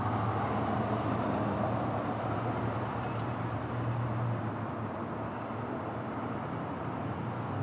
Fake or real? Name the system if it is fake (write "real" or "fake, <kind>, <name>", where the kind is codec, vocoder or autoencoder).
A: real